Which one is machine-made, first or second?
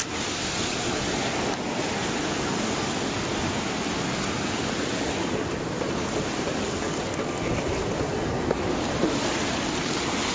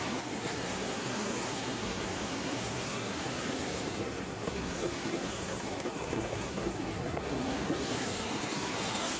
second